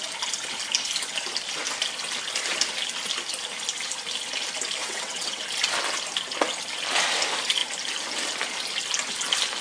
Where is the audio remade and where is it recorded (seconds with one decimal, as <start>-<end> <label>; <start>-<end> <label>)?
0.0-4.8 recorded; 4.8-5.4 remade; 5.4-9.6 recorded